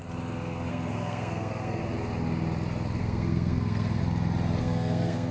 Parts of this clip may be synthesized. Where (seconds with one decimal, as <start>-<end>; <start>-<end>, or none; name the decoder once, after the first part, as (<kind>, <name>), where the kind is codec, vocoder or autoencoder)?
0.7-1.8 (codec, SNAC); 3.0-4.0; 4.6-5.3